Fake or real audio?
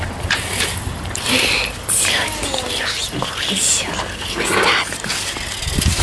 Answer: real